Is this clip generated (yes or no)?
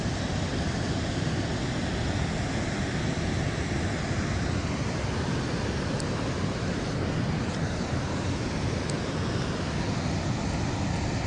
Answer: no